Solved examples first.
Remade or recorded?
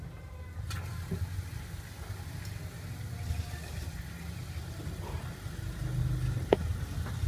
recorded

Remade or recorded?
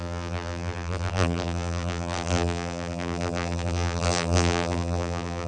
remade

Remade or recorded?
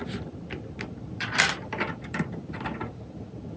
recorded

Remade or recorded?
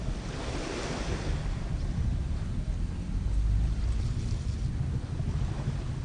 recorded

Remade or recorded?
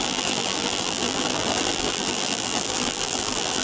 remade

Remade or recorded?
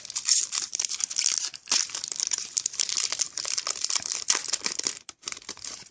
remade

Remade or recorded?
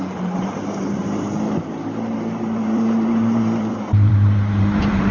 remade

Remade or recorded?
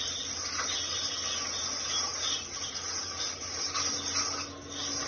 recorded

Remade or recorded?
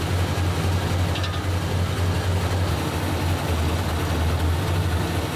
recorded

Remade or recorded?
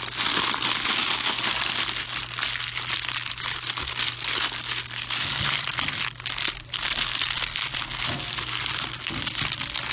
recorded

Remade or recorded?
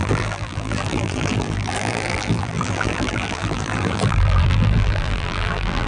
remade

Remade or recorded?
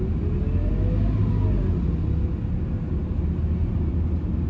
recorded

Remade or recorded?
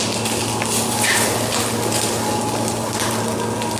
recorded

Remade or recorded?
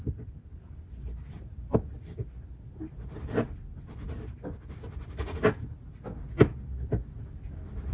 recorded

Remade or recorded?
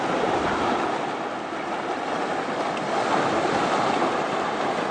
remade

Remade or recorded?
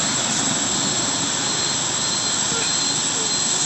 recorded